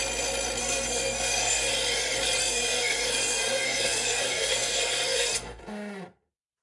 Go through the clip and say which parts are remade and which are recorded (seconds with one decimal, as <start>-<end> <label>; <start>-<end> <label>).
0.0-0.6 recorded; 0.6-1.7 remade; 1.7-2.4 recorded; 2.4-5.6 remade; 5.6-6.6 recorded